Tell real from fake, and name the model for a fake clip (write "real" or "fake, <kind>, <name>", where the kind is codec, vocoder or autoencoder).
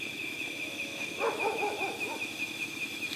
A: fake, autoencoder, DAC-VAE